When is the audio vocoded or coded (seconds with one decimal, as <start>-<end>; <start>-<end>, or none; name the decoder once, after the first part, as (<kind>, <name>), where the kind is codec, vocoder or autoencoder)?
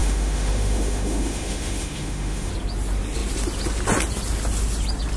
0.0-2.5 (autoencoder, DAC-VAE)